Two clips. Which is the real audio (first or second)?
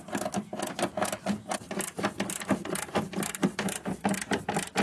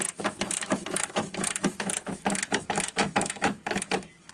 first